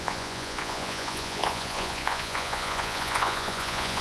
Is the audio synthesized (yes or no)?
yes